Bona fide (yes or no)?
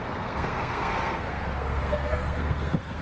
no